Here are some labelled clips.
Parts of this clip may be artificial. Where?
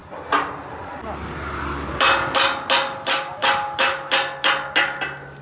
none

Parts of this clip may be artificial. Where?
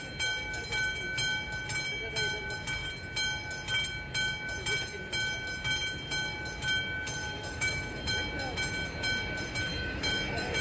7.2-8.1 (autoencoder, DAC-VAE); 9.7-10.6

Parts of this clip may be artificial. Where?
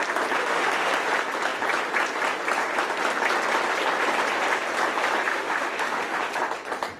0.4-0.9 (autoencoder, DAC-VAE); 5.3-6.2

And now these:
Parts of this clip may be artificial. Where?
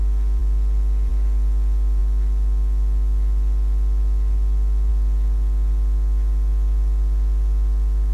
none